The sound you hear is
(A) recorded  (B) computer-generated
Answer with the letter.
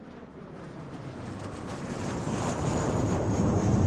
B